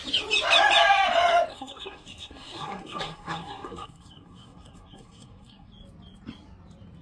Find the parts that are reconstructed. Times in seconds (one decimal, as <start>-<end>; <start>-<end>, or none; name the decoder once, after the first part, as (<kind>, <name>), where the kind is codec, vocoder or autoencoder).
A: 1.5-5.7 (codec, SNAC)